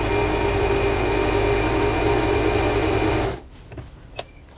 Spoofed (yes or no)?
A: no